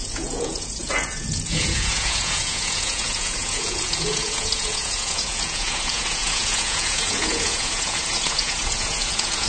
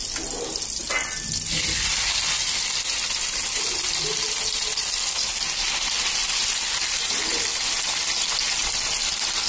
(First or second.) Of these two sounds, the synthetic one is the first